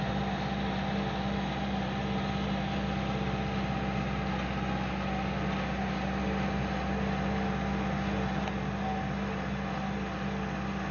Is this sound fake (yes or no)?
no